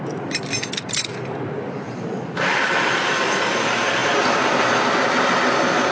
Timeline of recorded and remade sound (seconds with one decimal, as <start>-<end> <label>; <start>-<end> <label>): 0.0-5.9 recorded